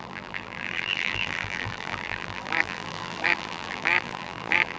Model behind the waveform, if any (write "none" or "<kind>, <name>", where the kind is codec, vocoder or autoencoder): vocoder, BigVGAN v2